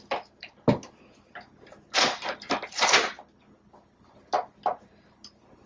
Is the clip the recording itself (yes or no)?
yes